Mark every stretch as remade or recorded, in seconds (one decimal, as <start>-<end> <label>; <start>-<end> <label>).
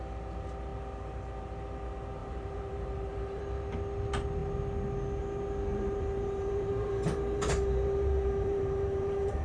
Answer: 0.0-2.2 recorded; 2.2-3.4 remade; 3.4-5.7 recorded; 5.7-9.4 remade